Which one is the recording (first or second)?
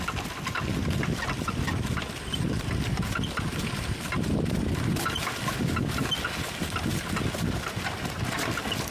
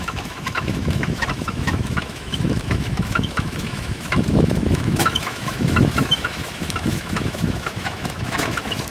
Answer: first